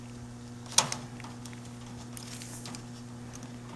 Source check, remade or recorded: recorded